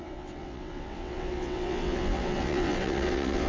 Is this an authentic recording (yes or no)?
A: no